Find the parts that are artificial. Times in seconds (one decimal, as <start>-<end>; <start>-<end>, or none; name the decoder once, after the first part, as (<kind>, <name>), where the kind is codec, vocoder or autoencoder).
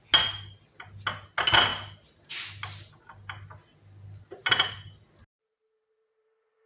none